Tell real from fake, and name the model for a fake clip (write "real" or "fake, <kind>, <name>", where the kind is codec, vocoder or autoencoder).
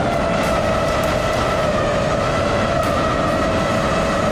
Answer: real